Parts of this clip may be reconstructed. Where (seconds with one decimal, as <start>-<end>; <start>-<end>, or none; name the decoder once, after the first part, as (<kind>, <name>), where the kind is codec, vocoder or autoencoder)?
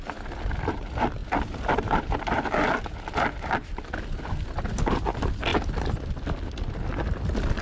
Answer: none